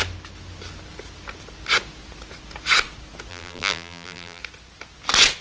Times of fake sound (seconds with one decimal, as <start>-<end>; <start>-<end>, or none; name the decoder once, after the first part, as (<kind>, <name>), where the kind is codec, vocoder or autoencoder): 3.3-4.4 (vocoder, BigVGAN v2)